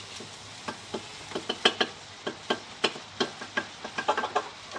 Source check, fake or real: real